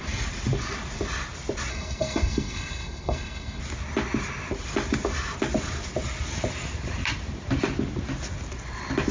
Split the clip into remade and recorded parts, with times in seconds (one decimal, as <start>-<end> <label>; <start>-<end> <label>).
0.0-1.7 recorded; 1.7-3.6 remade; 3.6-9.1 recorded